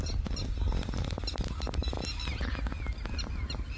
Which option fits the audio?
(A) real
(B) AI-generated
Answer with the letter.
A